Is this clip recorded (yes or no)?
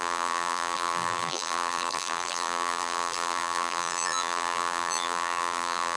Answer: no